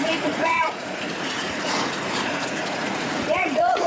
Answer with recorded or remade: remade